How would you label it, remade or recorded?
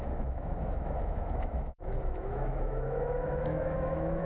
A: remade